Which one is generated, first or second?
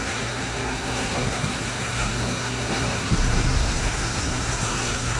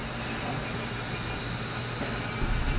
first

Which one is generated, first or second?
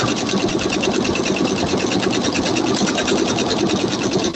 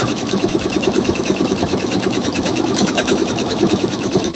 second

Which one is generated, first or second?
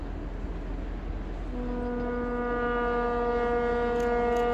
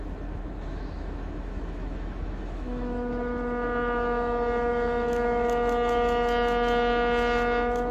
second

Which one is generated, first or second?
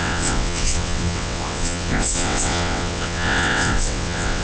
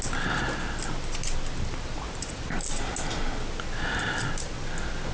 first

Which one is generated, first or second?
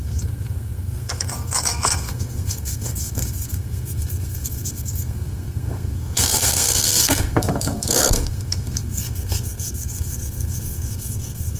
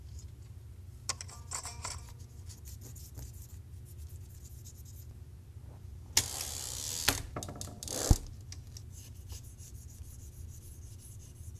first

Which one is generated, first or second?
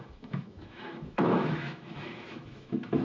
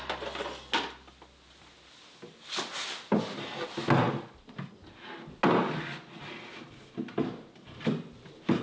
first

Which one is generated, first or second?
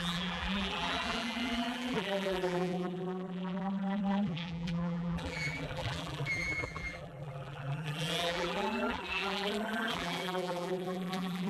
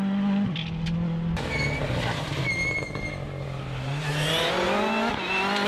first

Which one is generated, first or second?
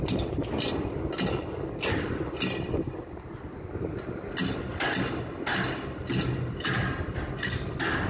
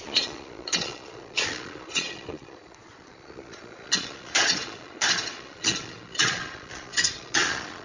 second